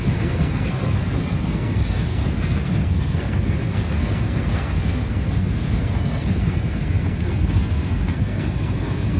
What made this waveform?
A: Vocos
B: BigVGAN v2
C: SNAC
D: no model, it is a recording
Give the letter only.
C